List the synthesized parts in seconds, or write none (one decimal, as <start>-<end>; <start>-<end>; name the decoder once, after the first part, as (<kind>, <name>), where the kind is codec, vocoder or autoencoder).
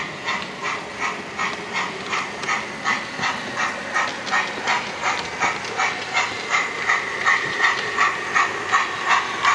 7.2-8.1 (vocoder, BigVGAN v2)